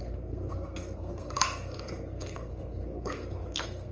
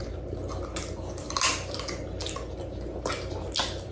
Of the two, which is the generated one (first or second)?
first